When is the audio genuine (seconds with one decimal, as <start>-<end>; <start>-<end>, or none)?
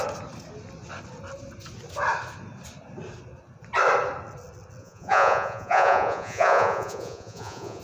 0.0-4.8